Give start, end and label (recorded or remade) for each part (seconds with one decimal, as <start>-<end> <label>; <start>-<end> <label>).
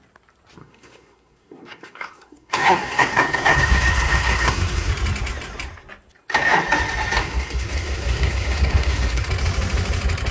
0.0-0.6 recorded; 0.6-4.9 remade; 4.9-7.2 recorded; 7.2-9.3 remade; 9.3-10.3 recorded